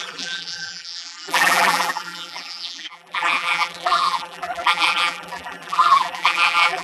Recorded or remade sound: remade